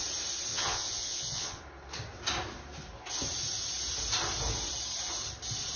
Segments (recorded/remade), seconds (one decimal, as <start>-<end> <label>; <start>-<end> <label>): 0.0-0.5 recorded; 0.5-1.6 remade; 1.6-5.8 recorded